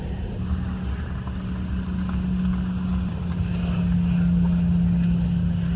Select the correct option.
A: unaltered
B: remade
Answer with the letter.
A